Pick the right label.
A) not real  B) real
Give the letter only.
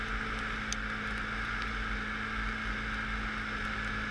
B